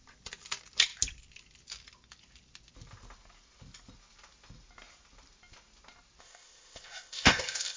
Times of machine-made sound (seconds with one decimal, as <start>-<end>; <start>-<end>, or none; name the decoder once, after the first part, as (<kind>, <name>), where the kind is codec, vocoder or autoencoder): 6.2-7.8 (codec, ZipCodec)